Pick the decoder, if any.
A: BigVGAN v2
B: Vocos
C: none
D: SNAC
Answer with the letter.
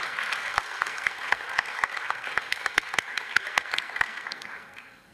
D